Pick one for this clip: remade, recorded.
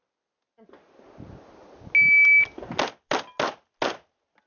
recorded